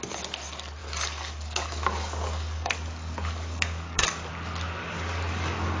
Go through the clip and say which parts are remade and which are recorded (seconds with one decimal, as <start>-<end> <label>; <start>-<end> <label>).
0.0-0.8 recorded; 0.8-4.3 remade; 4.3-4.8 recorded; 4.8-5.8 remade